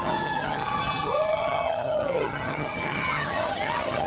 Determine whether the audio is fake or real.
fake